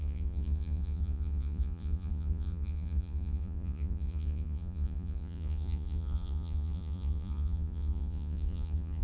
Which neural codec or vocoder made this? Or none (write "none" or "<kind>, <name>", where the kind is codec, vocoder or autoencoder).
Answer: vocoder, Vocos